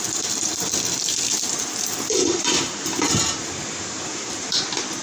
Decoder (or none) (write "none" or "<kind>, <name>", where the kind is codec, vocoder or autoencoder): vocoder, BigVGAN v2